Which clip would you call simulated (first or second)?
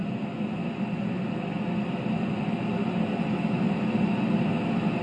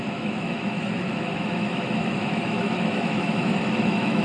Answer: second